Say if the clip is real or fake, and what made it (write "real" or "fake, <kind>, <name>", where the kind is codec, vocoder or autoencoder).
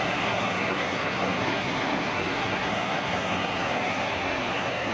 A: fake, codec, SNAC